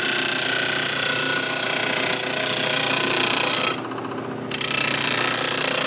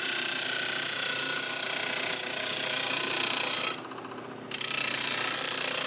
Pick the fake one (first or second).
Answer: second